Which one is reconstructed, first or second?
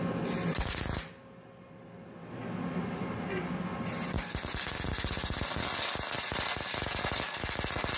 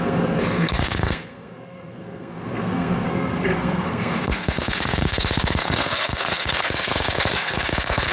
second